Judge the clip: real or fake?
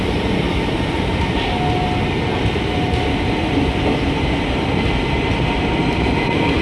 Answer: real